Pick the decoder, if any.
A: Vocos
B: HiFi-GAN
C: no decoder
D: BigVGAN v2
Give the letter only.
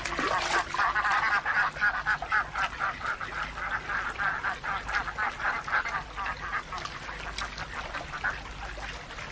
C